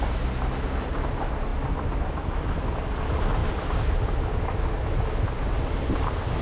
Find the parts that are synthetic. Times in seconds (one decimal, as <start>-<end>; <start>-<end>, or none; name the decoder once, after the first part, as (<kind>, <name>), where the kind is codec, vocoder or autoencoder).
3.4-4.1 (vocoder, BigVGAN v2)

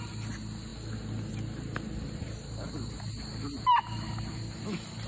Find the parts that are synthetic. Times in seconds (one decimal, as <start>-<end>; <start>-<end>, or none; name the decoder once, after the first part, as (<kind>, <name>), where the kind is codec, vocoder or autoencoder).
none

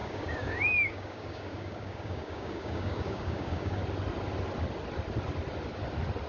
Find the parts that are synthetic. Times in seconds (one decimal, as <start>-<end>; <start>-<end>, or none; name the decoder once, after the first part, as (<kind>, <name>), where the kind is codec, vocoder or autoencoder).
0.0-3.8 (codec, DAC)

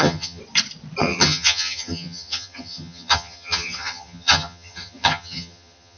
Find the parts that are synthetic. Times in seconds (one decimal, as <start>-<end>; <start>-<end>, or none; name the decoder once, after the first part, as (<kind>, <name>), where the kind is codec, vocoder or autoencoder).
0.0-0.4 (vocoder, HiFi-GAN); 1.0-6.0

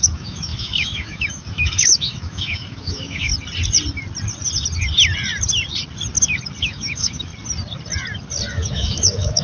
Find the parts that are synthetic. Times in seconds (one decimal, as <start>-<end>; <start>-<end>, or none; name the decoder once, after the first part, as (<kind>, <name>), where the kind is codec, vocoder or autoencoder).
0.0-3.3 (autoencoder, DAC-VAE); 6.6-7.3; 8.5-9.4

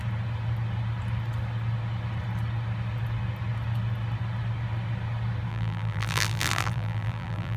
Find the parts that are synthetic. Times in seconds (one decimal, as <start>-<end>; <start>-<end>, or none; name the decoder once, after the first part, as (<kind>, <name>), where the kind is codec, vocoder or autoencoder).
5.5-7.6 (vocoder, BigVGAN v2)

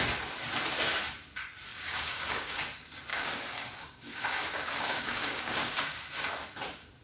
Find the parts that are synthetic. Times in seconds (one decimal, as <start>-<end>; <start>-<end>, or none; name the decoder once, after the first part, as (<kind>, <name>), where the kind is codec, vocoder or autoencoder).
1.7-2.6 (codec, DAC); 3.1-5.8